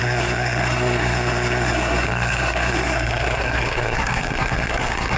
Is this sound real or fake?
fake